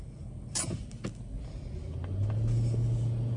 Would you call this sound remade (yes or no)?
no